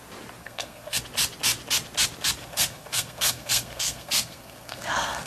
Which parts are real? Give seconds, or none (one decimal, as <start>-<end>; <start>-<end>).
0.0-0.4; 1.0-2.4